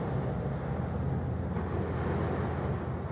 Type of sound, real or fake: real